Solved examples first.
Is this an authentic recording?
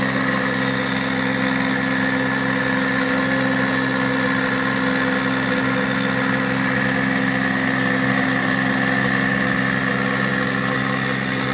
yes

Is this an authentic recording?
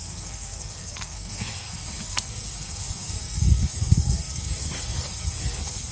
no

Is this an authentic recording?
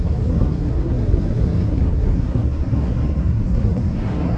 no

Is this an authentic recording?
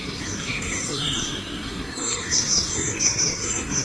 no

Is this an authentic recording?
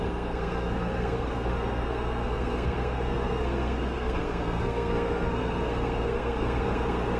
no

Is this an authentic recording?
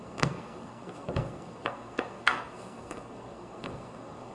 no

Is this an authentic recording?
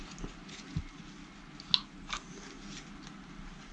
yes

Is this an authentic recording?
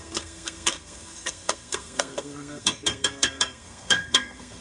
no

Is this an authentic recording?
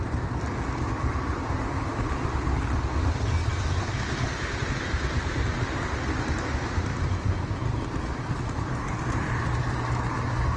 yes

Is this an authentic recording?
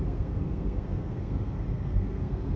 no